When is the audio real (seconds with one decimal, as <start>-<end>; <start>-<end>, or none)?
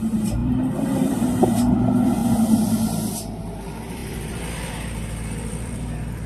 2.2-3.4